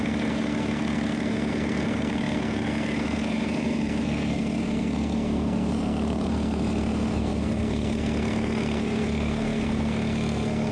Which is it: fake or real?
fake